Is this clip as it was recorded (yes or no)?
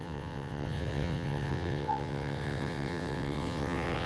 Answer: no